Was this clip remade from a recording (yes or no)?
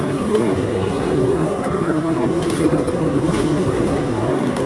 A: yes